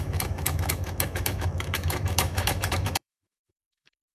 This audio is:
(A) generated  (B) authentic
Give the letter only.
A